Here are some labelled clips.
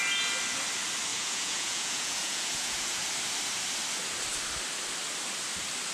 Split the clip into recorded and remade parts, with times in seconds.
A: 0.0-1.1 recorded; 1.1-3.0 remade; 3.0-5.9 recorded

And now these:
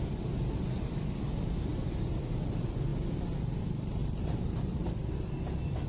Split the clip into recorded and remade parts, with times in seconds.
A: 0.0-4.0 recorded; 4.0-5.1 remade; 5.1-5.9 recorded